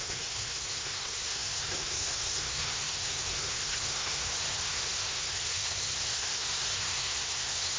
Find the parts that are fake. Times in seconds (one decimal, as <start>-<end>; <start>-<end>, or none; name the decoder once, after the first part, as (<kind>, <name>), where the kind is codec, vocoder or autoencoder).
0.0-7.8 (codec, SNAC)